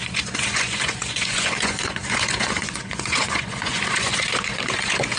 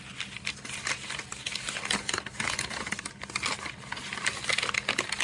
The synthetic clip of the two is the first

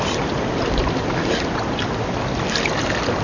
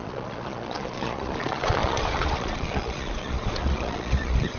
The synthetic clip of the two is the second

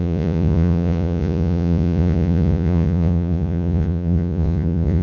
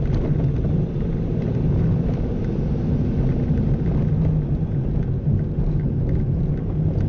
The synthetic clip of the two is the first